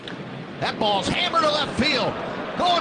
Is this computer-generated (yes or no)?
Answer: no